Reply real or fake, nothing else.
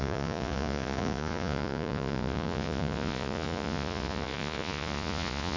fake